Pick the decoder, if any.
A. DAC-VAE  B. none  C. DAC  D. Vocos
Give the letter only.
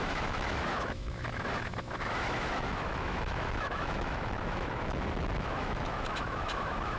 A